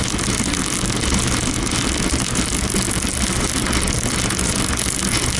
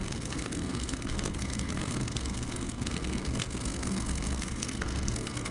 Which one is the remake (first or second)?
second